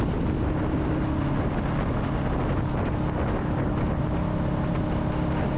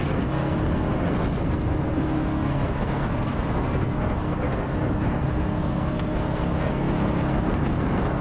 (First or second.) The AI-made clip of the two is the second